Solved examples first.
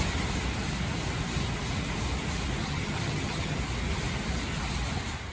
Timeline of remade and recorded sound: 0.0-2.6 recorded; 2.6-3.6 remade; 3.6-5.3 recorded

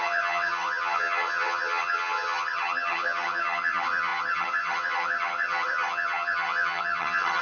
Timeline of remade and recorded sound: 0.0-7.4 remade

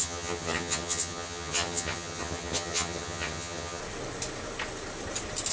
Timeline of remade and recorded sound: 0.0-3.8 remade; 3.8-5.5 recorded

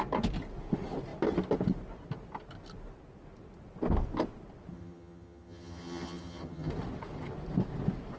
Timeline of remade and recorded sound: 0.0-4.7 recorded; 4.7-6.7 remade; 6.7-8.2 recorded